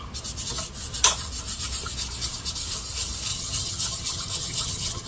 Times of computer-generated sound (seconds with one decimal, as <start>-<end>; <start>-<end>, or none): 3.3-5.1